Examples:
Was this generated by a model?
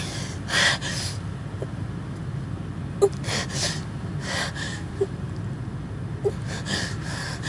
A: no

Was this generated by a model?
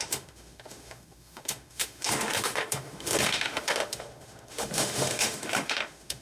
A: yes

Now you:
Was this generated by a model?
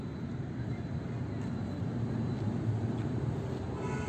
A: no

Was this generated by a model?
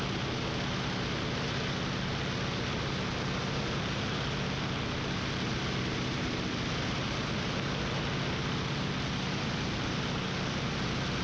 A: no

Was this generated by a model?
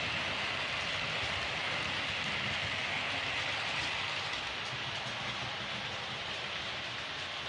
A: no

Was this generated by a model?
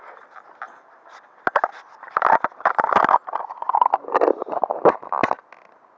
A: no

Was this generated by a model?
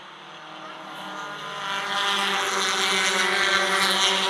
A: no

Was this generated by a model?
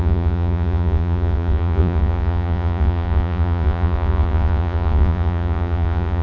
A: yes